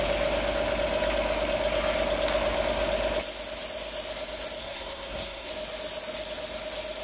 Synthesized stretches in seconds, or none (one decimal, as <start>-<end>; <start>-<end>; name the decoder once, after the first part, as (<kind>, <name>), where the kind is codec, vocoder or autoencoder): 4.6-5.5 (codec, SNAC)